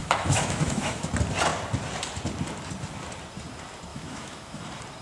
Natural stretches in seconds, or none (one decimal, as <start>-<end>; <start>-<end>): 1.1-3.9; 4.6-5.0